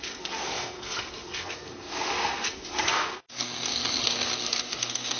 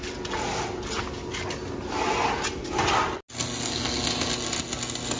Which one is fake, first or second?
first